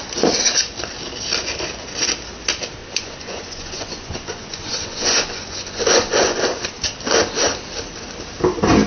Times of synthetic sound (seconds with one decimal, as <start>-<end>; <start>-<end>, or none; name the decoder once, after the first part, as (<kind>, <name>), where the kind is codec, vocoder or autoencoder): 2.8-6.4 (vocoder, Vocos)